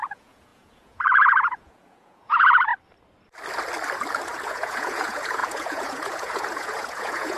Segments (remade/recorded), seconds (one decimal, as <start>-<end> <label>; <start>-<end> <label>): 0.0-2.7 remade; 2.7-4.2 recorded; 4.2-7.4 remade